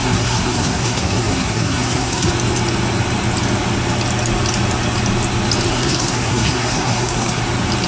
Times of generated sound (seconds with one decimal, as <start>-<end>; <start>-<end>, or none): 0.0-2.3; 5.7-7.4